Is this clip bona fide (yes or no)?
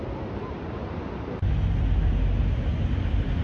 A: yes